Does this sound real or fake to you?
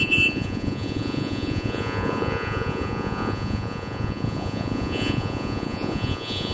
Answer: fake